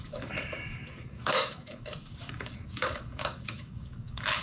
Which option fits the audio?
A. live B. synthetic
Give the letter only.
B